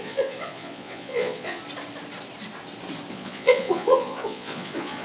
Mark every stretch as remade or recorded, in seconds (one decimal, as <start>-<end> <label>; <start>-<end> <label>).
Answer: 0.0-1.6 remade; 1.6-3.1 recorded; 3.1-5.0 remade